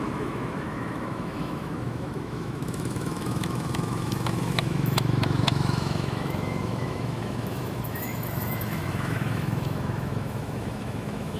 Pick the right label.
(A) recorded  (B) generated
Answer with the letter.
B